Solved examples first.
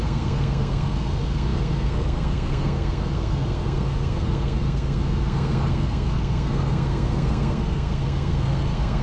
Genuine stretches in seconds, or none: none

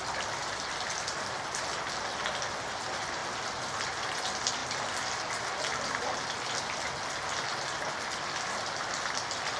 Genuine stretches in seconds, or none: 0.0-9.6

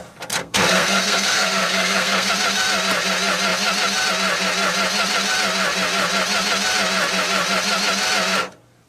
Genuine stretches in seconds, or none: 0.0-0.4; 2.3-8.9